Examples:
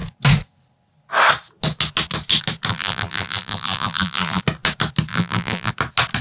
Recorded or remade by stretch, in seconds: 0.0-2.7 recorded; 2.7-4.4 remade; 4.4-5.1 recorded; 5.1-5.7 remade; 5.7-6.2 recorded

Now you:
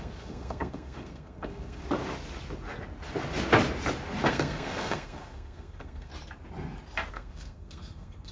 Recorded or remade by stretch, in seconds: 0.0-1.8 remade; 1.8-4.3 recorded; 4.3-6.1 remade; 6.1-7.1 recorded; 7.1-8.3 remade

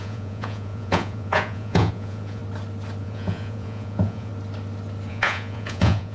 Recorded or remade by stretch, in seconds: 0.0-2.4 remade; 2.4-3.0 recorded; 3.0-4.3 remade; 4.3-5.1 recorded; 5.1-6.1 remade

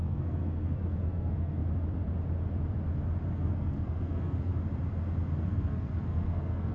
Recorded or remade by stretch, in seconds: 0.0-1.6 remade; 1.6-3.3 recorded; 3.3-4.5 remade; 4.5-5.4 recorded; 5.4-6.7 remade

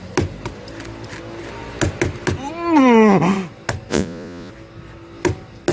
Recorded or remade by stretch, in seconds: 0.0-3.9 recorded; 3.9-4.5 remade; 4.5-5.7 recorded

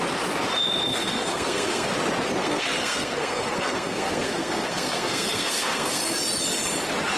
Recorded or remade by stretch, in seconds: 0.0-0.9 recorded; 0.9-1.9 remade; 1.9-2.4 recorded; 2.4-6.0 remade; 6.0-7.2 recorded